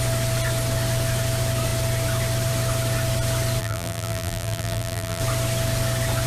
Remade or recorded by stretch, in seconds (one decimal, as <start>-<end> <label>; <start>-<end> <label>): 0.0-3.6 recorded; 3.6-5.2 remade; 5.2-6.3 recorded